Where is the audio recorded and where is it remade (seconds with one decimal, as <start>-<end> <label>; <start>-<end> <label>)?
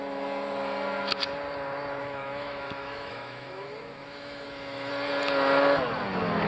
0.0-2.0 recorded; 2.0-4.9 remade; 4.9-6.5 recorded